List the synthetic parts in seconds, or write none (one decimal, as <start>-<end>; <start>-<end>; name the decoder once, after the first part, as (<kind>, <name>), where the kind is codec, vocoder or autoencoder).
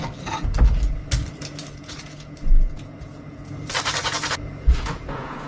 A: 1.7-3.5 (vocoder, Vocos); 4.0-5.5